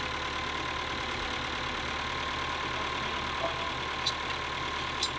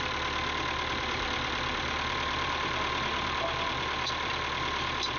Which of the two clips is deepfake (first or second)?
second